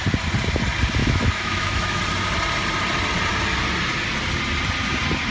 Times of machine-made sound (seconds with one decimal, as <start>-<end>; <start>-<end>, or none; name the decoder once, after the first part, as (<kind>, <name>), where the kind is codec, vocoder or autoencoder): 1.0-2.0 (autoencoder, DAC-VAE)